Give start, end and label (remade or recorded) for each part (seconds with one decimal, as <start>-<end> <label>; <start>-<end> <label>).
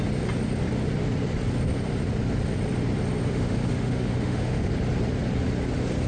0.0-3.3 recorded; 3.3-4.7 remade; 4.7-6.1 recorded